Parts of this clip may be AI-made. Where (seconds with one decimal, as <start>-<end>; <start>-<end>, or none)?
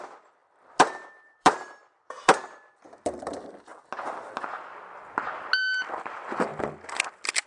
0.0-3.7; 5.9-6.5; 7.1-7.5